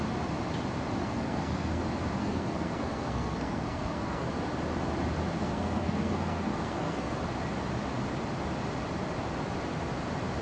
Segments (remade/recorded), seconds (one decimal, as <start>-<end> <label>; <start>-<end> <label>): 0.0-1.0 recorded; 1.0-1.8 remade; 1.8-2.2 recorded; 2.2-4.3 remade; 4.3-5.4 recorded; 5.4-7.2 remade; 7.2-10.4 recorded

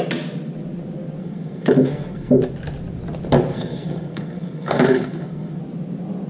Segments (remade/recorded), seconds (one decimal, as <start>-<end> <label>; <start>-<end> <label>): 0.0-1.2 recorded; 1.2-2.4 remade; 2.4-3.5 recorded; 3.5-5.6 remade; 5.6-6.3 recorded

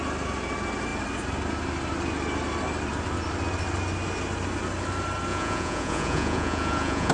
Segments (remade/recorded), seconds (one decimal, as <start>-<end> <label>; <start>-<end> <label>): 0.0-5.3 recorded; 5.3-7.1 remade